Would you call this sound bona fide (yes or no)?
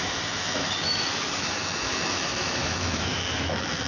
no